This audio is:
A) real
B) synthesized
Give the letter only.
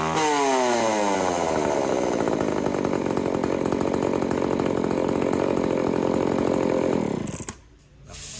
A